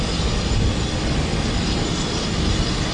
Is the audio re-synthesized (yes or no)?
no